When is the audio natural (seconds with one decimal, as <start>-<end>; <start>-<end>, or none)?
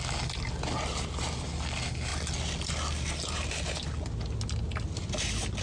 0.0-5.6